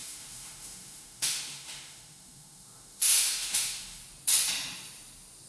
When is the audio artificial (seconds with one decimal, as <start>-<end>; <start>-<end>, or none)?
0.0-4.0